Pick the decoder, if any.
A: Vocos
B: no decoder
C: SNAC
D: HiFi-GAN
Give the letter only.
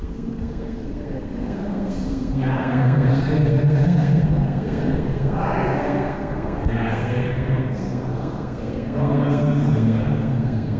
C